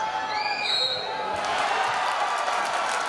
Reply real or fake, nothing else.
real